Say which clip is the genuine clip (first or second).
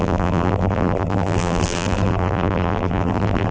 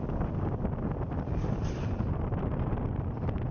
second